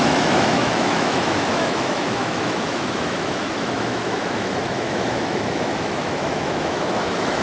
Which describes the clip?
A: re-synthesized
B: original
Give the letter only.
A